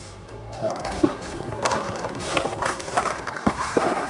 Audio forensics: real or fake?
fake